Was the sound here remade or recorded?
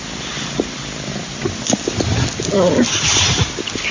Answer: recorded